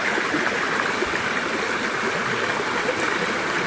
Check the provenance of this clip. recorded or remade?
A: recorded